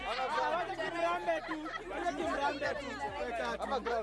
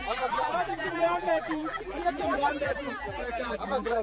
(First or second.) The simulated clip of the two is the second